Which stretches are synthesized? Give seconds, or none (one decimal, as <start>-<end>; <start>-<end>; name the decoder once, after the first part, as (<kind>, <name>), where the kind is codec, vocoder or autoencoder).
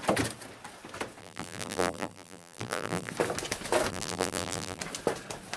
1.2-3.1 (vocoder, BigVGAN v2); 3.9-4.8